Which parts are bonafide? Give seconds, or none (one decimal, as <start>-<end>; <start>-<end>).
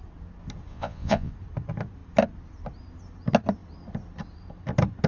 0.0-0.7; 1.3-5.1